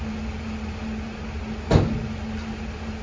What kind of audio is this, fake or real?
real